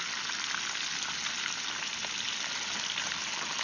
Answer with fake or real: real